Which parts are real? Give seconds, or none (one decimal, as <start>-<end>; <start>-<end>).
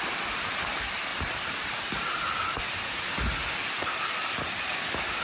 0.0-1.1; 2.6-3.4; 4.5-5.2